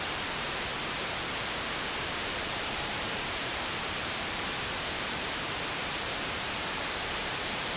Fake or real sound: fake